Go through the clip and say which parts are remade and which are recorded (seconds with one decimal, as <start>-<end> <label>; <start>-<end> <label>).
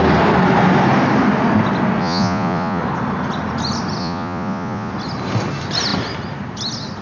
0.0-2.0 recorded; 2.0-2.8 remade; 2.8-4.0 recorded; 4.0-4.9 remade; 4.9-7.0 recorded